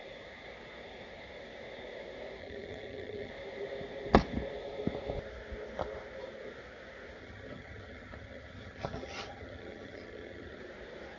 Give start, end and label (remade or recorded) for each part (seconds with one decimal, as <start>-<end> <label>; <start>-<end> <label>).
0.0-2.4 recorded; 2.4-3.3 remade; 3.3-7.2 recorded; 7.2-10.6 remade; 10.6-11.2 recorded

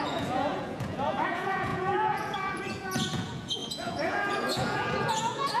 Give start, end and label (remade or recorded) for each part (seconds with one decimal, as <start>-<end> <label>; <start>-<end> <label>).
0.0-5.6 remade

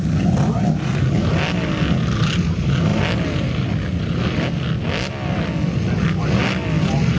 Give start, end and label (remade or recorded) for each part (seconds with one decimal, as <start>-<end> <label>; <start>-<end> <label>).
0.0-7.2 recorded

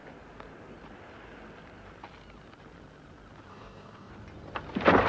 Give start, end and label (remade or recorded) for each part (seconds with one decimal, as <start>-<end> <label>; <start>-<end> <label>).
0.0-3.5 recorded; 3.5-4.1 remade; 4.1-5.1 recorded

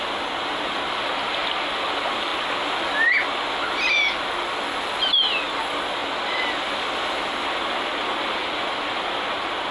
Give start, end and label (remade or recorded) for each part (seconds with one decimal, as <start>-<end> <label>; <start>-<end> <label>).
0.0-8.4 recorded; 8.4-9.7 remade

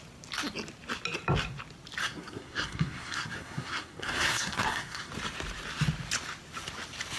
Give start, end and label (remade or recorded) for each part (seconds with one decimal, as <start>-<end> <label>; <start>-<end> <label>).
0.0-2.0 recorded; 2.0-5.1 remade; 5.1-7.2 recorded

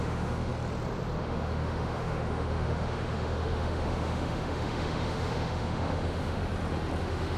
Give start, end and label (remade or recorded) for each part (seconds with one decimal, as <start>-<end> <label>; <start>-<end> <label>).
0.0-0.5 remade; 0.5-1.2 recorded; 1.2-6.4 remade; 6.4-7.0 recorded; 7.0-7.4 remade

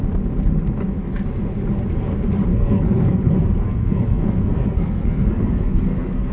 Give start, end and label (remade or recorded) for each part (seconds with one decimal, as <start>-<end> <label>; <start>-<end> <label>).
0.0-2.5 recorded; 2.5-6.3 remade